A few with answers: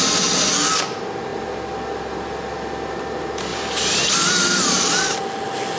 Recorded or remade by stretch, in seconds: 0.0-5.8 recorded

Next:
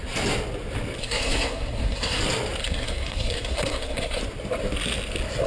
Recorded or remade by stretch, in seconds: 0.0-1.0 recorded; 1.0-2.2 remade; 2.2-2.6 recorded; 2.6-4.2 remade; 4.2-5.5 recorded

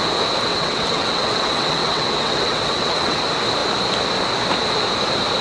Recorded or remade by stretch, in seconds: 0.0-0.5 recorded; 0.5-3.2 remade; 3.2-5.4 recorded

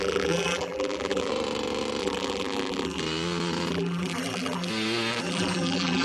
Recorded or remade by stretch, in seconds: 0.0-1.3 remade; 1.3-2.0 recorded; 2.0-3.0 remade; 3.0-3.7 recorded; 3.7-4.7 remade; 4.7-5.2 recorded; 5.2-6.0 remade